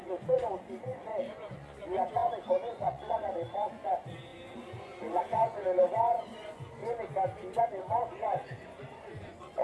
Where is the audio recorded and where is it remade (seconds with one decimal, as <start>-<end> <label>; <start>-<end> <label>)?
0.0-6.8 remade; 6.8-7.6 recorded; 7.6-9.6 remade